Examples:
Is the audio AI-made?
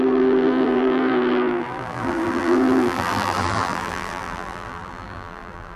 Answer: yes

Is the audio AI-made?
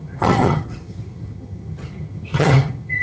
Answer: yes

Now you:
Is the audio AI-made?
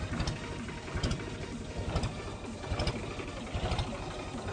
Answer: no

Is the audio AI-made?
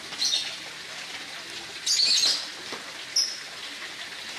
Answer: no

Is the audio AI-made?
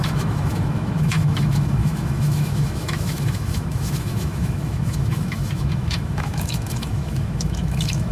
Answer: yes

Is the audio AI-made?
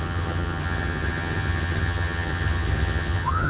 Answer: yes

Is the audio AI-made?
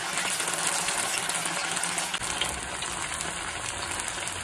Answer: no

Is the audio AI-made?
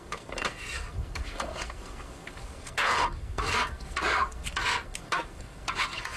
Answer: yes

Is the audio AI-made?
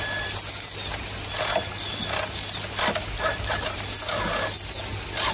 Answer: no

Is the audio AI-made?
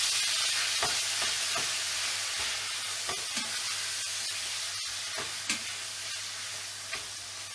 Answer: no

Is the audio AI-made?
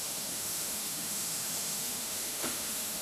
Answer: yes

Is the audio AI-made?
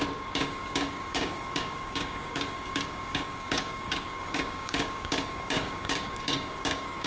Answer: yes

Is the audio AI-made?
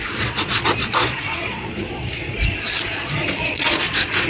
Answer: yes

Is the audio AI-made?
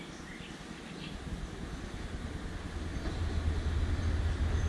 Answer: no